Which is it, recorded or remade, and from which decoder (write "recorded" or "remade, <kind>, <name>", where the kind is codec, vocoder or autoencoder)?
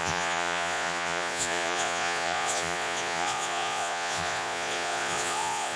remade, vocoder, Vocos